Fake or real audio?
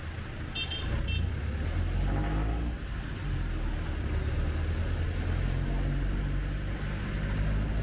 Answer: real